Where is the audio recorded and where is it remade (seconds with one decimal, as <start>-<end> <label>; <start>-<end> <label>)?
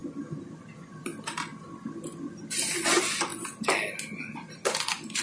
0.0-5.2 recorded